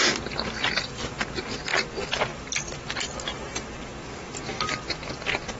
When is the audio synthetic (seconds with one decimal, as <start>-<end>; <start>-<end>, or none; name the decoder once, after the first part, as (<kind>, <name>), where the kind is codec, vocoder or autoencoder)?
none